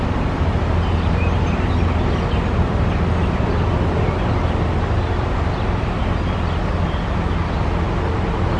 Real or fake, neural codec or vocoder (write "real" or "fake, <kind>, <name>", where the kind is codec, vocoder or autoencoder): real